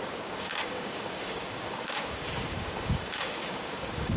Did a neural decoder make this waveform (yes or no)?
yes